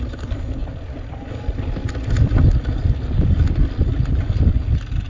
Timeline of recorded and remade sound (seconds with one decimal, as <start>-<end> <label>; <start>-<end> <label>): 0.0-5.1 recorded